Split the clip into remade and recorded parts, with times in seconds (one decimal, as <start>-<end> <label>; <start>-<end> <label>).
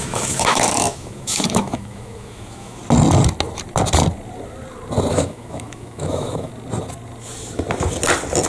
0.0-2.8 remade; 2.8-5.1 recorded; 5.1-6.5 remade; 6.5-8.5 recorded